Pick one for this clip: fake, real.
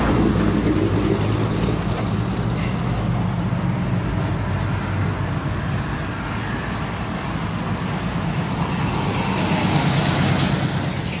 real